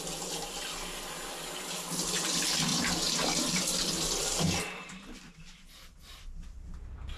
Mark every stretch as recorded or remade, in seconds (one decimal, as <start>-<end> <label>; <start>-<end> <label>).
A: 0.0-2.7 recorded; 2.7-7.2 remade